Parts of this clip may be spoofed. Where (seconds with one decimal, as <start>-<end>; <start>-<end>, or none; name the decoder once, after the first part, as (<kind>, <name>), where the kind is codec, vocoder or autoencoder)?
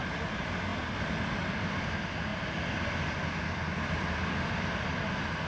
none